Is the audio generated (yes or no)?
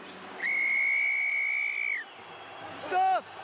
no